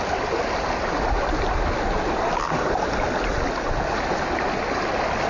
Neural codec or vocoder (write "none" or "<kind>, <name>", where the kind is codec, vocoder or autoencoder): none